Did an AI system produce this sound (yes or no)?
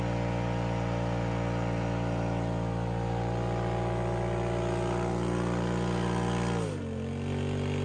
no